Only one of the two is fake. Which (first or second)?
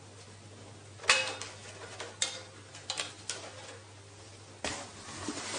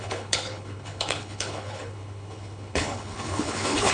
second